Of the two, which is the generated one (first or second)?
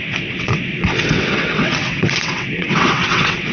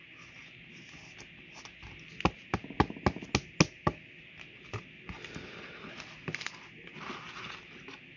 first